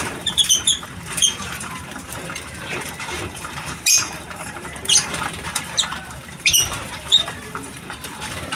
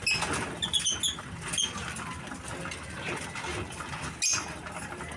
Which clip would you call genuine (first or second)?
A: second